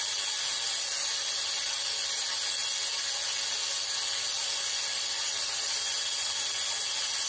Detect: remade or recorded recorded